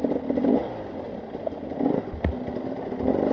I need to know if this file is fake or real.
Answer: real